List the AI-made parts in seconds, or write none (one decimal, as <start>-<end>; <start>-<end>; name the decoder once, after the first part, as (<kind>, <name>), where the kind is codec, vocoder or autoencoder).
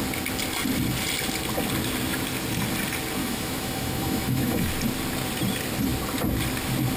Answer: 3.2-4.7 (autoencoder, DAC-VAE)